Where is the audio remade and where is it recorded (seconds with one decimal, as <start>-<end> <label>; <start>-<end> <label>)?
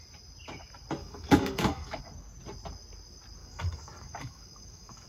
0.0-1.0 recorded; 1.0-2.0 remade; 2.0-3.4 recorded; 3.4-5.1 remade